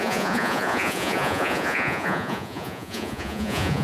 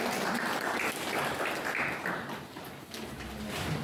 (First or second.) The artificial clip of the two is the first